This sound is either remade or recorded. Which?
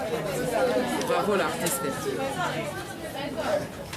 recorded